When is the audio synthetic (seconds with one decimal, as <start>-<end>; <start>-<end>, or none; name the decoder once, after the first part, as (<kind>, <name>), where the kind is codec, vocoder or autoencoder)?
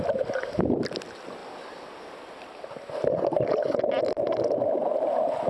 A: none